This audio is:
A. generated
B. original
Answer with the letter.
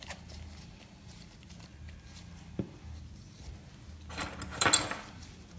B